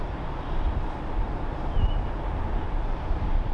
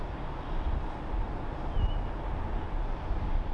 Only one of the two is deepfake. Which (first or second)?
first